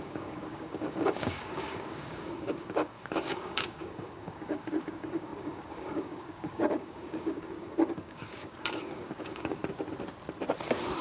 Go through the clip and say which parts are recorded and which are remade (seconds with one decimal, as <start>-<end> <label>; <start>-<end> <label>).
0.0-9.6 remade; 9.6-11.0 recorded